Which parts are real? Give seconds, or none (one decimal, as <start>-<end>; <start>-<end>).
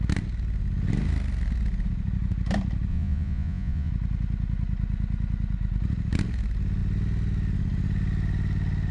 0.0-2.9; 3.9-8.9